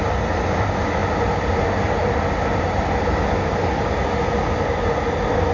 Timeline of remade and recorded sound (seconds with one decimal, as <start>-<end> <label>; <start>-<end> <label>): 0.0-5.5 recorded